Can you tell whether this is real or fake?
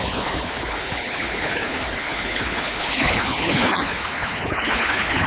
fake